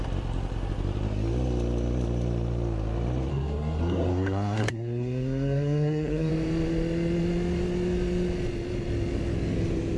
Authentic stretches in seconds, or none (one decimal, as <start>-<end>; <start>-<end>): 0.0-3.3; 6.3-10.0